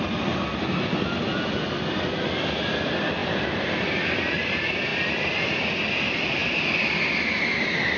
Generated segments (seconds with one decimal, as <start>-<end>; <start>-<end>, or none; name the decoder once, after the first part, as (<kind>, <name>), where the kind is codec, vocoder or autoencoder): none